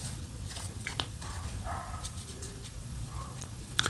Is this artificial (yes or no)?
yes